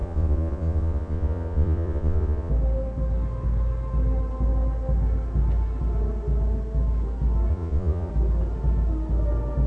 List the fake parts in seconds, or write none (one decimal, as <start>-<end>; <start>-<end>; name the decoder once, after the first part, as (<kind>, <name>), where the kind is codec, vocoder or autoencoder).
0.0-2.5 (vocoder, Vocos); 7.5-8.1